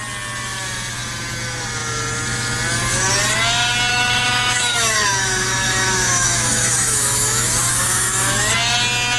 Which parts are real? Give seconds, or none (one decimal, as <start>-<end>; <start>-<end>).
0.0-3.9; 8.5-9.2